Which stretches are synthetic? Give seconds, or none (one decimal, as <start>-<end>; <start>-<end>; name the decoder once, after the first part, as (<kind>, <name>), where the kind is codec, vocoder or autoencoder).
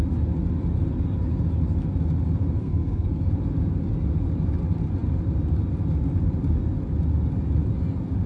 2.6-3.2 (codec, SNAC)